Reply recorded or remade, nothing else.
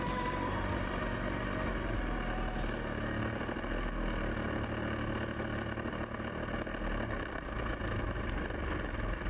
recorded